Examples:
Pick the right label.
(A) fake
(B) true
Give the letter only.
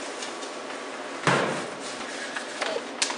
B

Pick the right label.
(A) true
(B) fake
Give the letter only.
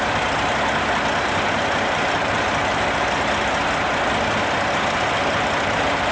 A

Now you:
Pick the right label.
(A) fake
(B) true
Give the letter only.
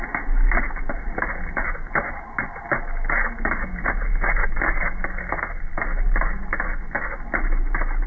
B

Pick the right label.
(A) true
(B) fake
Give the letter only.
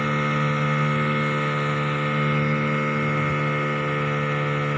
A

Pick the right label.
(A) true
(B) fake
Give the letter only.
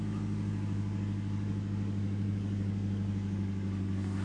B